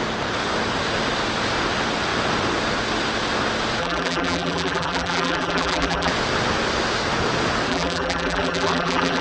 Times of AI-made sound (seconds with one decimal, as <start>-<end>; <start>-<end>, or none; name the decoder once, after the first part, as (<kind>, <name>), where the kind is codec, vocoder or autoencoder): 3.8-6.1 (vocoder, BigVGAN v2); 7.7-9.2